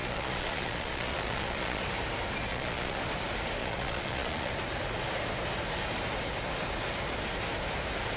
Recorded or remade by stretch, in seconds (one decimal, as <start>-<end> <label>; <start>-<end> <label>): 0.0-1.8 remade; 1.8-2.5 recorded; 2.5-3.0 remade; 3.0-3.6 recorded; 3.6-4.5 remade; 4.5-8.2 recorded